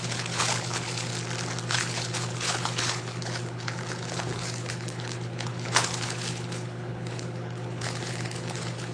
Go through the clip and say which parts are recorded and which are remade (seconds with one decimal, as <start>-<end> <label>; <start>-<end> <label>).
0.0-1.1 remade; 1.1-1.7 recorded; 1.7-8.9 remade